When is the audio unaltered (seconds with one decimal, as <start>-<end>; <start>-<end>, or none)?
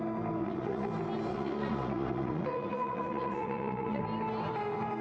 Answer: 0.0-0.4; 0.9-1.3; 4.0-5.0